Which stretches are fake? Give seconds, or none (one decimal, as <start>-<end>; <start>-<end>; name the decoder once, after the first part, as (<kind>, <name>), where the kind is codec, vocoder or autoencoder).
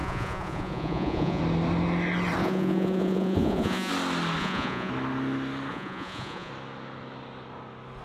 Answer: 0.0-1.4 (vocoder, Vocos); 2.4-3.9; 4.4-4.9; 5.7-6.5